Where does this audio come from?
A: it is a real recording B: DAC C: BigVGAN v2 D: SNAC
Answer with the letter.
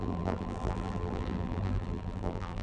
C